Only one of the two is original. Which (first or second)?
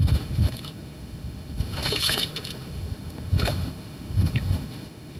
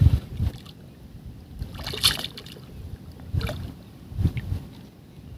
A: second